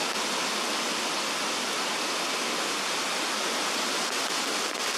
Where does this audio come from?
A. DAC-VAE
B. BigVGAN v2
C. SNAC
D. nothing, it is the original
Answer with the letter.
D